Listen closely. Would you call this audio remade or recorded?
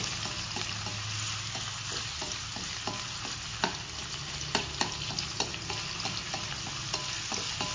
recorded